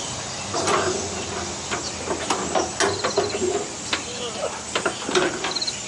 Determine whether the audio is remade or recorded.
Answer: recorded